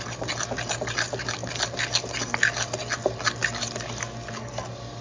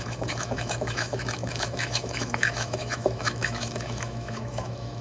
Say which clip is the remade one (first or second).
second